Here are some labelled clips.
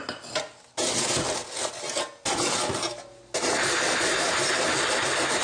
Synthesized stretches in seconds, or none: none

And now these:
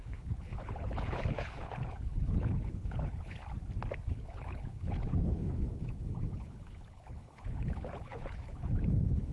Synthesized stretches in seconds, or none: 0.0-3.4; 4.1-9.3

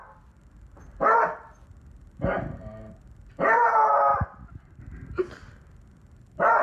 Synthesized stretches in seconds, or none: none

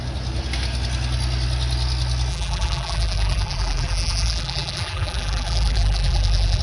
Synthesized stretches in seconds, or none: 2.3-6.6

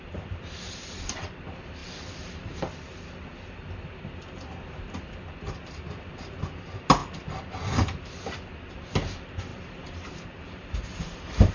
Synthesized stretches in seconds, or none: 9.5-11.5